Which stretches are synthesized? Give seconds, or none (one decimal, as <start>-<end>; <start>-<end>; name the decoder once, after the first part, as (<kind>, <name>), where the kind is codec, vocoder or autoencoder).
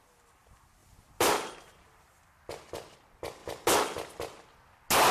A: none